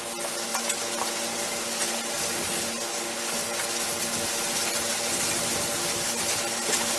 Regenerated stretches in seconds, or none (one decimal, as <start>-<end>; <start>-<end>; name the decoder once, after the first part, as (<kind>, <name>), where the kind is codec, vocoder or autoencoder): none